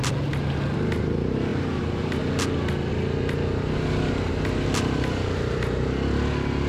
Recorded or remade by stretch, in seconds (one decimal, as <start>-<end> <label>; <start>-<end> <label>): 0.0-1.5 recorded; 1.5-2.2 remade; 2.2-6.7 recorded